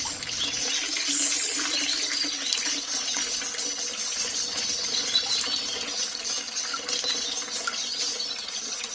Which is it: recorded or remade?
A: recorded